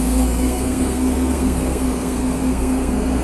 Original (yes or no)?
no